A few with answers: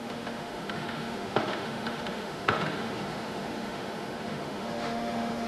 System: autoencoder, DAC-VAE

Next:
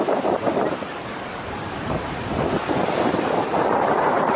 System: vocoder, BigVGAN v2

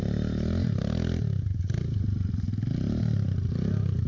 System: none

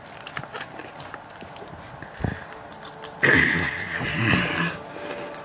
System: none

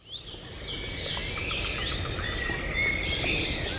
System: none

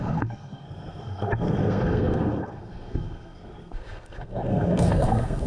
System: codec, SNAC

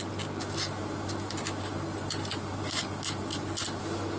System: none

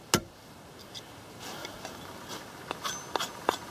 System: none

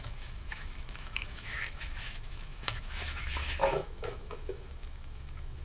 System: autoencoder, DAC-VAE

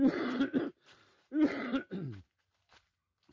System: none